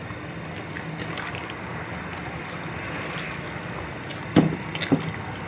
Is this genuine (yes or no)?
yes